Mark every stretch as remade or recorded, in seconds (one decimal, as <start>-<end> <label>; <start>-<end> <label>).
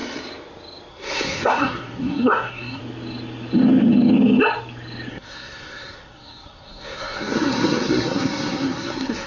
0.0-0.9 recorded; 0.9-2.8 remade; 2.8-5.1 recorded; 5.1-9.3 remade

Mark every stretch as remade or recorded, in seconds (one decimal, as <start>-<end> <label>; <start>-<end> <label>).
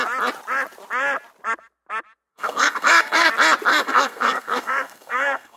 0.0-2.3 recorded; 2.3-3.3 remade; 3.3-3.7 recorded; 3.7-5.6 remade